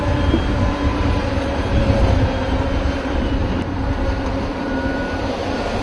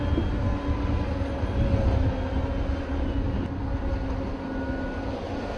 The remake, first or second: first